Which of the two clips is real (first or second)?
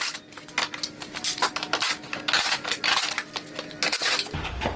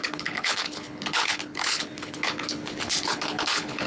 first